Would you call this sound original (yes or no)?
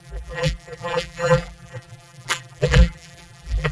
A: no